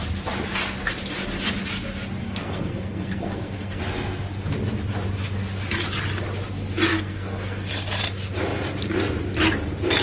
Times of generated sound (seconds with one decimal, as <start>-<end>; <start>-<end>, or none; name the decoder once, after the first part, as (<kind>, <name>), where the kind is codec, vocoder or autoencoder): 2.2-3.8 (codec, SNAC); 6.9-7.7